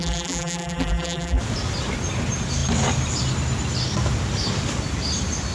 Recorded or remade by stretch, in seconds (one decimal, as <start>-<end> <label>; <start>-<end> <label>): 0.0-1.4 remade; 1.4-5.5 recorded